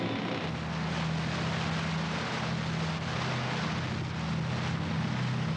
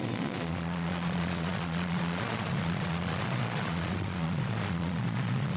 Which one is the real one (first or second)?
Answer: first